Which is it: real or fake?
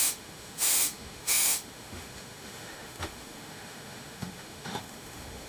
fake